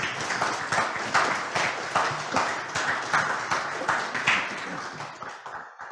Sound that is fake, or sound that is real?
real